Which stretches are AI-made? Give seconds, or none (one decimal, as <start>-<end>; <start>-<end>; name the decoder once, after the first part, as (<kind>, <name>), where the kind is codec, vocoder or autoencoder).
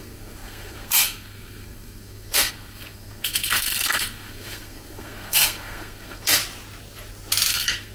0.0-6.4 (codec, SNAC); 7.5-7.9